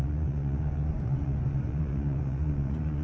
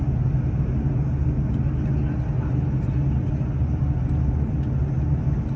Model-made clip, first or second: first